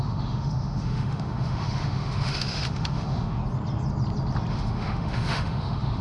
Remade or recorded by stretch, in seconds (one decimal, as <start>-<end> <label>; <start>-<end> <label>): 0.0-3.4 remade; 3.4-4.5 recorded; 4.5-6.0 remade